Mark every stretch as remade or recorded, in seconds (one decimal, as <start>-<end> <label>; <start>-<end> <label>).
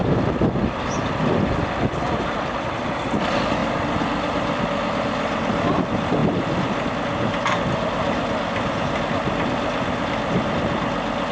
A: 0.0-3.6 recorded; 3.6-5.8 remade; 5.8-11.3 recorded